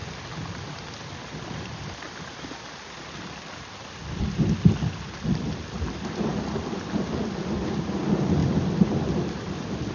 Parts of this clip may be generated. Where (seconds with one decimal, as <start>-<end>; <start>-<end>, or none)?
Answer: none